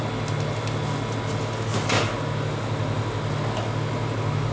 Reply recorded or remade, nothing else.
recorded